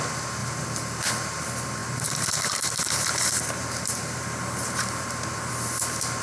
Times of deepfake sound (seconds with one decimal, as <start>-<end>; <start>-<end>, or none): 0.4-1.1; 1.8-5.5